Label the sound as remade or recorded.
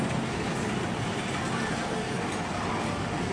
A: recorded